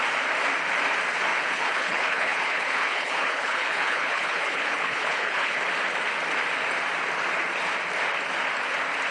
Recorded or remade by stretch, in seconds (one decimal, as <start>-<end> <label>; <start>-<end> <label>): 0.0-1.3 recorded; 1.3-5.6 remade; 5.6-9.1 recorded

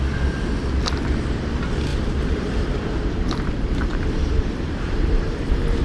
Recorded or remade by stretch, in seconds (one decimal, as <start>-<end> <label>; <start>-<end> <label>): 0.0-1.9 recorded; 1.9-5.8 remade

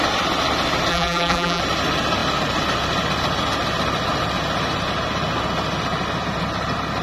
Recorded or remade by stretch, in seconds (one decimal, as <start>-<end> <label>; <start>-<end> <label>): 0.0-0.9 recorded; 0.9-1.6 remade; 1.6-7.0 recorded

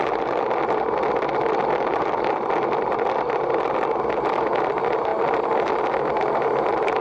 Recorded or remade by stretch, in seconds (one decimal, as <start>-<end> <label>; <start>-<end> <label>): 0.0-7.0 recorded

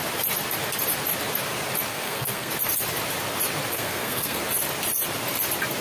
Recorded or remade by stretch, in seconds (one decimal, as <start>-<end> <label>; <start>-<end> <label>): 0.0-1.9 recorded; 1.9-2.5 remade; 2.5-3.7 recorded; 3.7-4.4 remade; 4.4-5.8 recorded

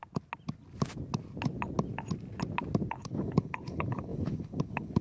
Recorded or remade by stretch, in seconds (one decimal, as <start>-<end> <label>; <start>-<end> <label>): 0.0-2.9 recorded; 2.9-5.0 remade

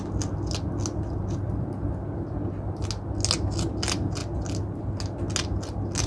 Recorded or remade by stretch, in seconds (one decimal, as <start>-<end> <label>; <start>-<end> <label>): 0.0-6.1 recorded